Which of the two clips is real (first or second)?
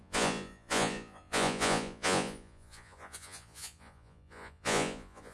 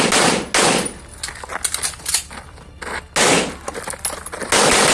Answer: second